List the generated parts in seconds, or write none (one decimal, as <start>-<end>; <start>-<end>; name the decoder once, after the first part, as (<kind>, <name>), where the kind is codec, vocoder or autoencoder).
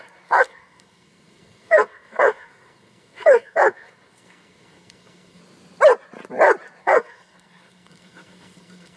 0.0-5.4 (codec, SNAC); 6.8-9.0